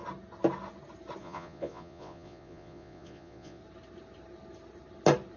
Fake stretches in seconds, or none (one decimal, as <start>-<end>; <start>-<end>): 1.2-3.6